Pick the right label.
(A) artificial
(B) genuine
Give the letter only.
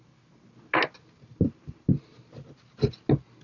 B